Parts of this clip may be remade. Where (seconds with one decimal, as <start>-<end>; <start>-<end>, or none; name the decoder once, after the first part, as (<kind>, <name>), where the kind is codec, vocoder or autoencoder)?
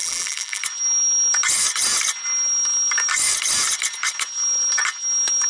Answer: 0.0-0.6 (vocoder, BigVGAN v2)